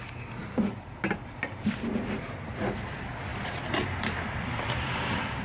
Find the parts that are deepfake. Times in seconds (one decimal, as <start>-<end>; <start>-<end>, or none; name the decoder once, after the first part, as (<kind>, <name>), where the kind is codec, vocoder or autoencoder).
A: 3.3-5.4 (vocoder, BigVGAN v2)